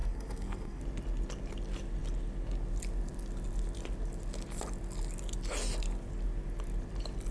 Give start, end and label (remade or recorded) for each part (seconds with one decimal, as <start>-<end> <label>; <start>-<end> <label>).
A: 0.0-0.8 remade; 0.8-7.3 recorded